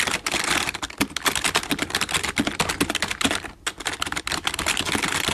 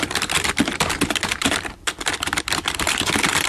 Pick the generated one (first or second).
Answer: second